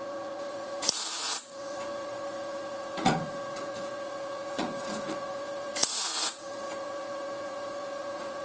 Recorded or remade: remade